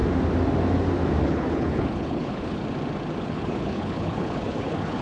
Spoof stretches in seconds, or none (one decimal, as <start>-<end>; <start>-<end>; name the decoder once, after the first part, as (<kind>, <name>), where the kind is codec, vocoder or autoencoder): 1.2-2.6 (codec, HILCodec); 3.2-5.0